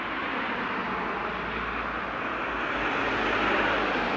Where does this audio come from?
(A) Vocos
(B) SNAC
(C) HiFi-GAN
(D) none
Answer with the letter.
D